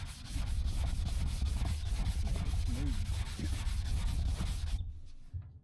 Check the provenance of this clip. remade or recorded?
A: recorded